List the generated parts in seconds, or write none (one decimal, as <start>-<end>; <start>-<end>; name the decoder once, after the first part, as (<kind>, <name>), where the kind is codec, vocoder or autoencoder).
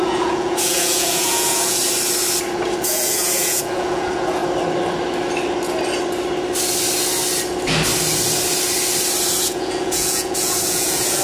0.0-1.8 (vocoder, Vocos); 2.8-4.4; 9.4-11.2